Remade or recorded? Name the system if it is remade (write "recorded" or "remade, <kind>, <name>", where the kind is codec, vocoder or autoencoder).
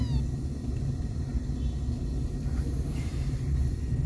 recorded